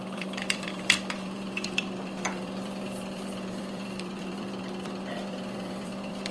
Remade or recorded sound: remade